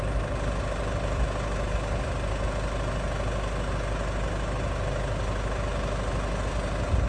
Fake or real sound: real